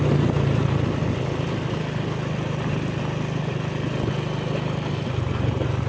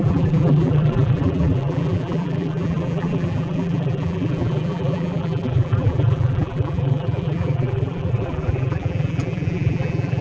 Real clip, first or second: first